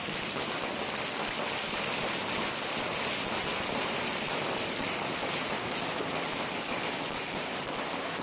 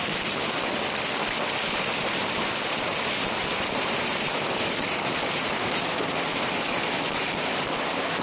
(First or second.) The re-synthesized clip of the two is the second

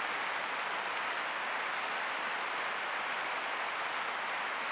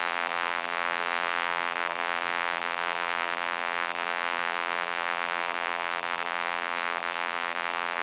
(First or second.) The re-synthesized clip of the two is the second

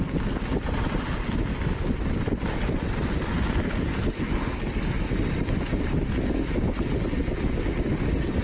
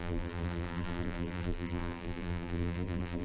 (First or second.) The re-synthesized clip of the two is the second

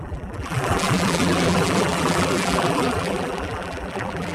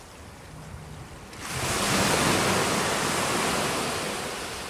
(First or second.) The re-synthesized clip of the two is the first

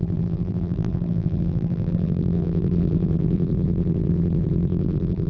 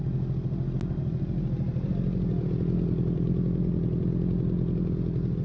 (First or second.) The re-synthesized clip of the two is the first